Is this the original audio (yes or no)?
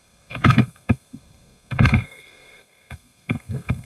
no